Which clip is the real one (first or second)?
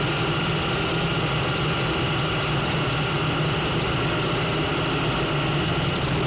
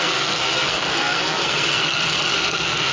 first